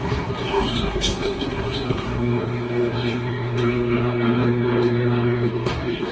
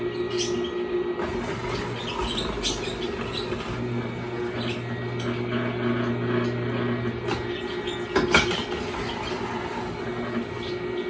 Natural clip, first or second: second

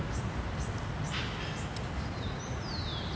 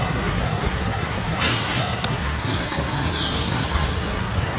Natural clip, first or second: first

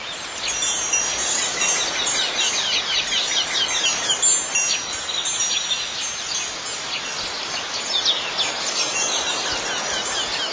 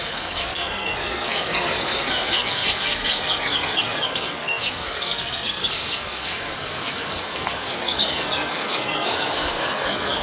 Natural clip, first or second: first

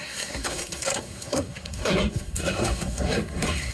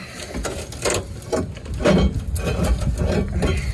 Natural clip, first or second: second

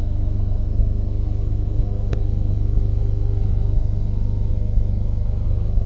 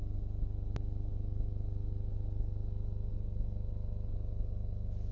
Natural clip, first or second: second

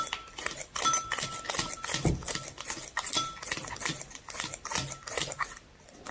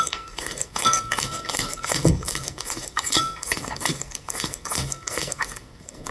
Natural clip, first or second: first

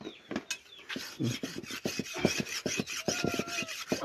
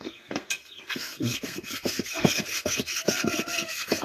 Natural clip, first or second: first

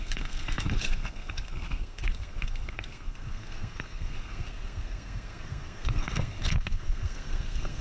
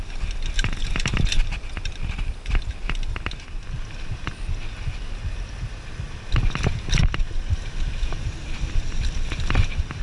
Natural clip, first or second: second